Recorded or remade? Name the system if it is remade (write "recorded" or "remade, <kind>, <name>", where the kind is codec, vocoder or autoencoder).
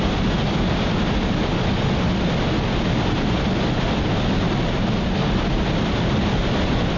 recorded